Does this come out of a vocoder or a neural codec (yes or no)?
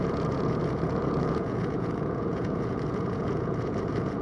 yes